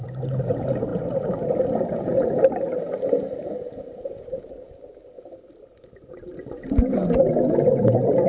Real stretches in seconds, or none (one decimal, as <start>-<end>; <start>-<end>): 0.0-8.3